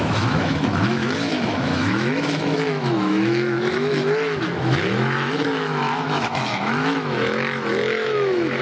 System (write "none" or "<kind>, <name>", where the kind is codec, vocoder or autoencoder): autoencoder, DAC-VAE